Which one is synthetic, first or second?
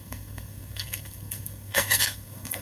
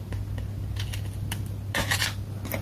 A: first